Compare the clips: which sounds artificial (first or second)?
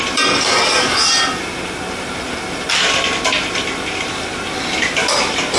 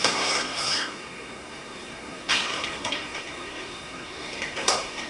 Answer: second